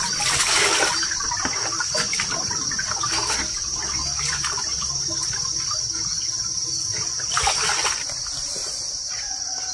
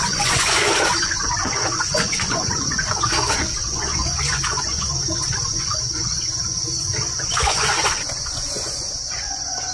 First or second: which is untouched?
first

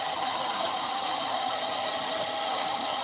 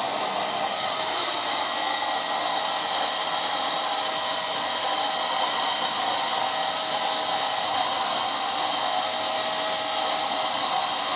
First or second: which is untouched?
second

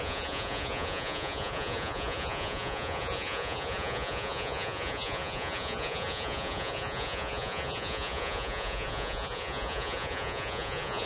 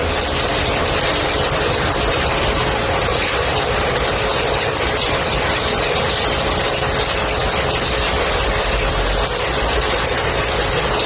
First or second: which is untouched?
second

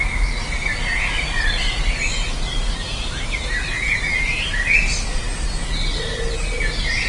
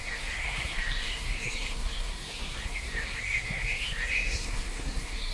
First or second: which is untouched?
first